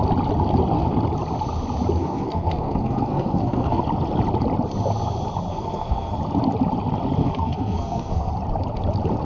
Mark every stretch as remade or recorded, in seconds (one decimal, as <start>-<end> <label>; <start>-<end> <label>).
0.0-2.0 recorded; 2.0-3.8 remade; 3.8-5.5 recorded; 5.5-6.1 remade; 6.1-7.2 recorded; 7.2-8.3 remade; 8.3-9.2 recorded